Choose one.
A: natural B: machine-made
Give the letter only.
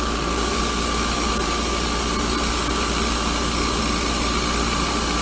A